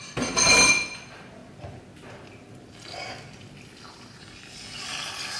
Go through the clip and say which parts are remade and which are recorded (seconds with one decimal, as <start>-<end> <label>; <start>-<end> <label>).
0.0-4.2 recorded; 4.2-4.9 remade; 4.9-5.4 recorded